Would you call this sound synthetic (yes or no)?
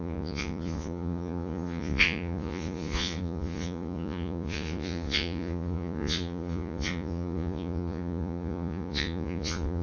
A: yes